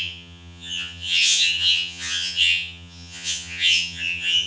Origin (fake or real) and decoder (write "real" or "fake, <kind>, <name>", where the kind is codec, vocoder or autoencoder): fake, vocoder, HiFi-GAN